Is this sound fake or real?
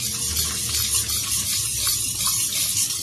real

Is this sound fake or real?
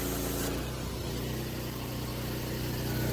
real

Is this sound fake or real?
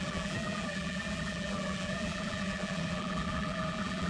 fake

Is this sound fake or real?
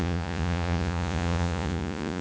fake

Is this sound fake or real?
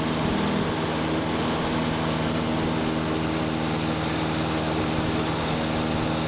real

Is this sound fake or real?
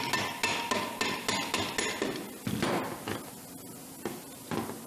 real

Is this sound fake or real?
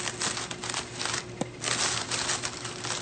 real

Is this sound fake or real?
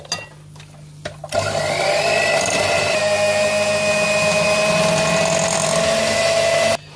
real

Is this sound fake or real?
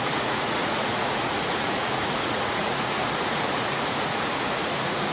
fake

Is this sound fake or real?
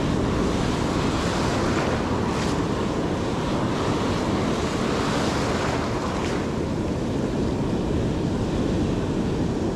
real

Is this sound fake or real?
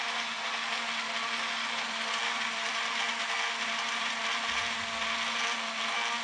real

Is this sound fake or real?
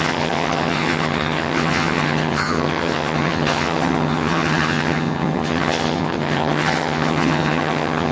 fake